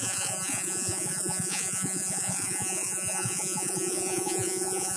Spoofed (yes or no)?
yes